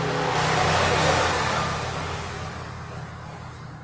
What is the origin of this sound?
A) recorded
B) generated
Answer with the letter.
A